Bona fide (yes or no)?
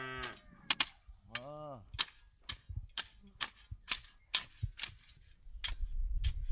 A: yes